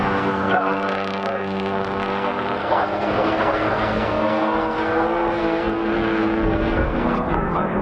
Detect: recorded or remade remade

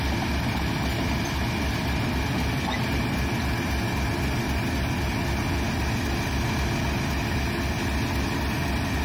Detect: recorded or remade recorded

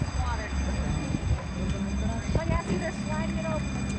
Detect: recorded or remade recorded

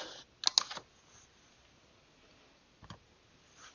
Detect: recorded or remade recorded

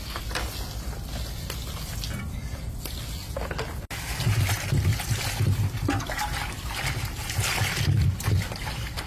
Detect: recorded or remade recorded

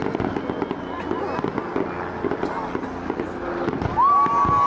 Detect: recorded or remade recorded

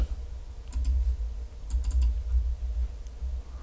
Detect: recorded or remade recorded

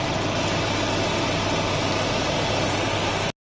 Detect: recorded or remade recorded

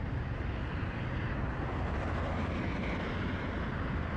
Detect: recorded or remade recorded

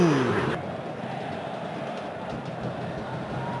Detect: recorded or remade recorded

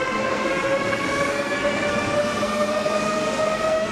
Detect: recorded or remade remade